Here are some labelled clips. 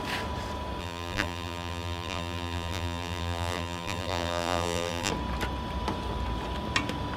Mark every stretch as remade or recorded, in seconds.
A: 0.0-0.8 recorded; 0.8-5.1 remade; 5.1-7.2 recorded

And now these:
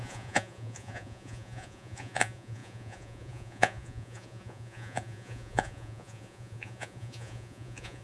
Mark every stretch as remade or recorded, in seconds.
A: 0.0-8.0 remade

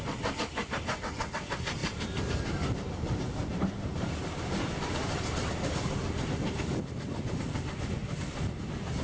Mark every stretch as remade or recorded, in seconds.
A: 0.0-1.8 recorded; 1.8-5.5 remade; 5.5-9.0 recorded

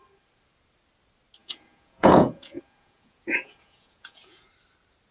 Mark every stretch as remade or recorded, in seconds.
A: 0.0-1.4 recorded; 1.4-4.5 remade; 4.5-5.1 recorded

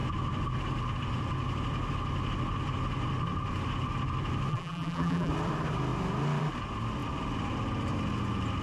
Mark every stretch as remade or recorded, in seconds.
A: 0.0-4.5 recorded; 4.5-5.3 remade; 5.3-8.6 recorded

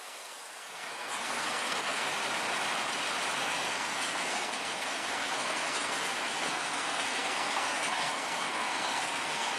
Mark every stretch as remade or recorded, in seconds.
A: 0.0-2.1 remade; 2.1-3.4 recorded; 3.4-9.6 remade